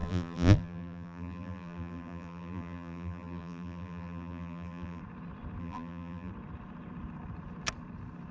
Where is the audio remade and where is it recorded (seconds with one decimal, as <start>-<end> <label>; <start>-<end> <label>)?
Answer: 0.0-5.0 remade; 5.0-5.6 recorded; 5.6-6.3 remade; 6.3-8.3 recorded